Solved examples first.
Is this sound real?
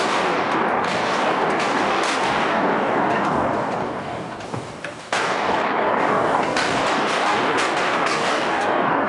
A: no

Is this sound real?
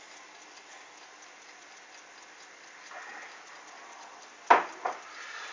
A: yes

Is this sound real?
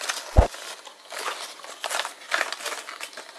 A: yes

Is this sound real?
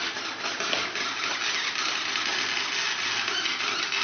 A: yes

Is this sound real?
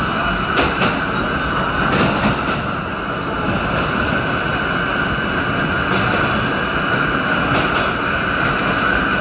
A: yes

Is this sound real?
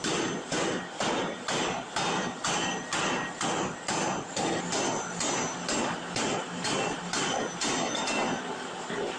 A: yes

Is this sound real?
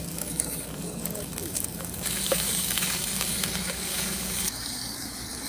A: no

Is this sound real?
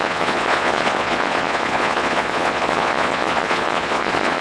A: no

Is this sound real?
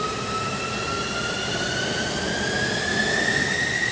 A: yes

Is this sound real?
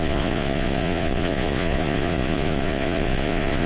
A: no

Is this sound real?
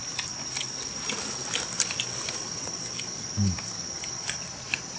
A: yes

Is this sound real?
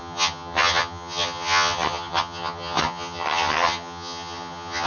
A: no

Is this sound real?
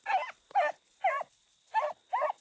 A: yes